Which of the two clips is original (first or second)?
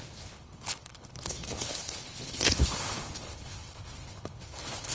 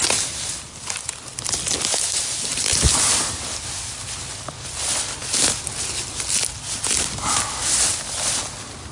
second